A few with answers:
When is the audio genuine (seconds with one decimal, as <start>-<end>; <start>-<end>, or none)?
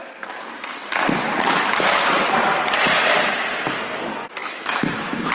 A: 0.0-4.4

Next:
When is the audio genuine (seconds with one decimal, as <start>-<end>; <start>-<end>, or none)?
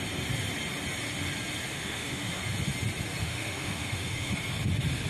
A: 0.0-1.7; 2.4-3.2; 4.3-5.1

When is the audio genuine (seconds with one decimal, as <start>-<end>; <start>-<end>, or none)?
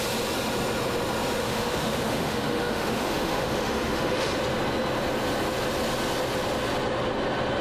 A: 0.0-1.4; 4.3-7.6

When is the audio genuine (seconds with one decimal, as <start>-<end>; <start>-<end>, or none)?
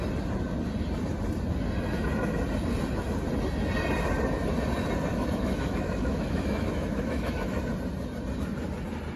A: 0.0-5.1; 7.6-9.2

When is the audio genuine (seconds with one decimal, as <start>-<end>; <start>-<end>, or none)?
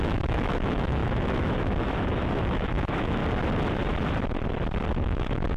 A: 3.2-4.9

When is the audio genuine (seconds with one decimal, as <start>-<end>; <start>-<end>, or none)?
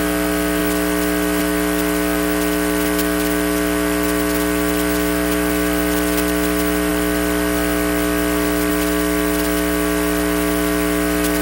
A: 0.0-11.4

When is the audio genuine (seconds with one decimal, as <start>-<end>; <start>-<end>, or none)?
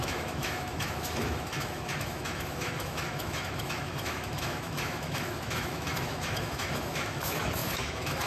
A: none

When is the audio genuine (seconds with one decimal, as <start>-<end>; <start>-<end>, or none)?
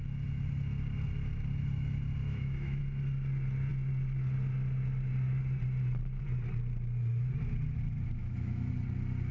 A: 0.0-2.2; 2.8-8.2; 8.7-9.3